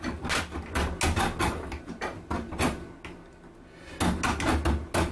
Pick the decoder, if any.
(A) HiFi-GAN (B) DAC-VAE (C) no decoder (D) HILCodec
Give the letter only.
C